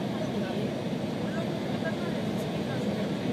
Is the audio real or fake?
real